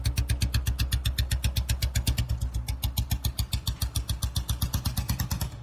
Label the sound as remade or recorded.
recorded